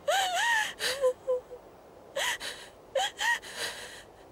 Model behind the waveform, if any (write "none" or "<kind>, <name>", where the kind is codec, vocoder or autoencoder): none